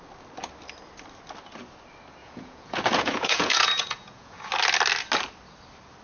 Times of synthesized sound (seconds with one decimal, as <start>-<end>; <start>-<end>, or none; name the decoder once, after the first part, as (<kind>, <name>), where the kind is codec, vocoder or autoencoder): 2.2-4.5 (vocoder, Vocos)